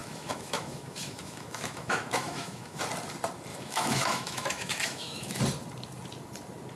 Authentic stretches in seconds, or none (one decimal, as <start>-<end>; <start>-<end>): 2.8-3.5; 5.4-6.8